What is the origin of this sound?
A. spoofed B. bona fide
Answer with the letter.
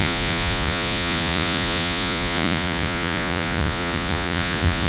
A